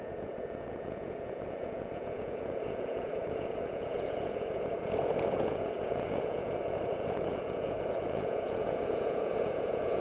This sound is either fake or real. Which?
fake